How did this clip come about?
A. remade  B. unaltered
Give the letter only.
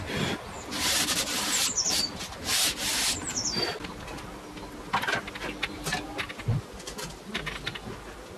B